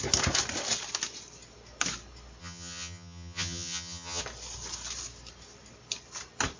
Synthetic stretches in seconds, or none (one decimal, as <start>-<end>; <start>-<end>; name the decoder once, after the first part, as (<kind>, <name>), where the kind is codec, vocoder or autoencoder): 2.4-4.2 (vocoder, HiFi-GAN)